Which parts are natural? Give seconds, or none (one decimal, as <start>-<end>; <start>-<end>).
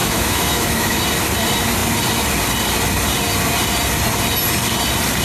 1.0-5.2